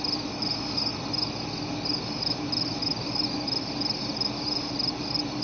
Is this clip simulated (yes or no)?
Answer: no